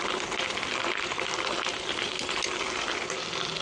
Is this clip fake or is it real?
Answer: real